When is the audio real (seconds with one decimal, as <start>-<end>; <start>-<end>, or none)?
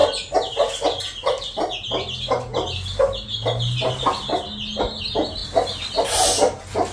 0.0-5.4; 5.9-6.9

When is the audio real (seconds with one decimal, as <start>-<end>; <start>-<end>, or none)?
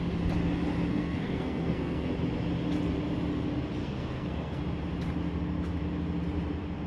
0.0-0.9; 2.1-3.8; 4.6-6.9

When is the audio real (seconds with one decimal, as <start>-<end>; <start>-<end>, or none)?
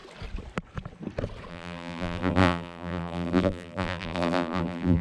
0.0-1.5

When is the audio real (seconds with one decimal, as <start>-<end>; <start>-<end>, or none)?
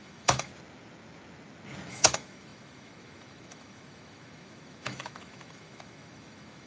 0.5-1.9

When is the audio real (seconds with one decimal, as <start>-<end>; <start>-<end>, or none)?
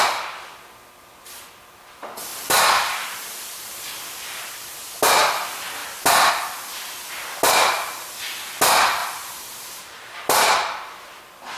0.0-2.3; 3.9-9.0; 11.2-11.6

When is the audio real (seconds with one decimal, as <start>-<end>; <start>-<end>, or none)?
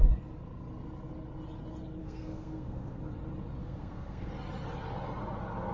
0.0-2.0; 3.0-3.6; 4.3-5.7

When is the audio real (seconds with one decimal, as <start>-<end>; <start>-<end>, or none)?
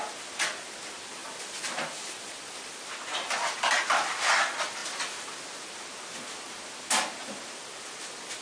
0.0-1.2; 2.9-4.8; 5.3-8.4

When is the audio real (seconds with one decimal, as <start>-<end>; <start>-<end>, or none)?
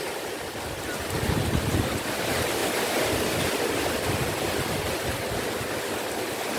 0.0-6.6